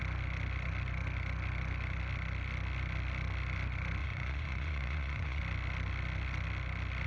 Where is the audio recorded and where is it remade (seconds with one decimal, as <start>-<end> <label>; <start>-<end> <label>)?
0.0-4.0 recorded; 4.0-5.4 remade; 5.4-7.1 recorded